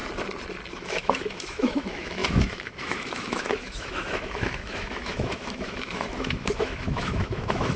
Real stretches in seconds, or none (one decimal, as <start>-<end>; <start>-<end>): 0.0-0.7